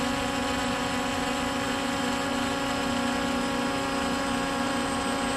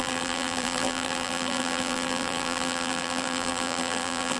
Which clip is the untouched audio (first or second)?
first